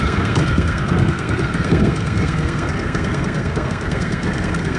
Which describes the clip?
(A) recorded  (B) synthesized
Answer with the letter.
B